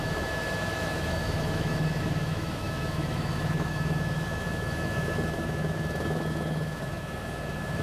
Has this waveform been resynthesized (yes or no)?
yes